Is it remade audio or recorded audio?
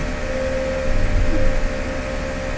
recorded